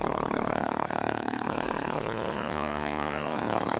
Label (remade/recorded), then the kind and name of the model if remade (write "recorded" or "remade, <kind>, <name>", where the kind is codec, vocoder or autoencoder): remade, codec, SNAC